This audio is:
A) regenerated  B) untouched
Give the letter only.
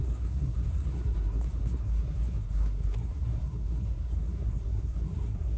A